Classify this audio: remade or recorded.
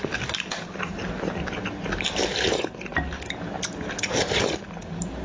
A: recorded